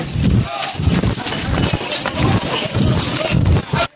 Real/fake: real